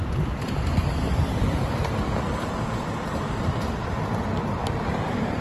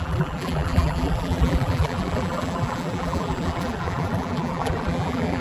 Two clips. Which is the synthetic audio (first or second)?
second